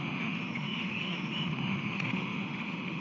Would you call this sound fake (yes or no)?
yes